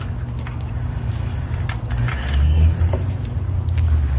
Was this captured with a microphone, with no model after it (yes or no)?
yes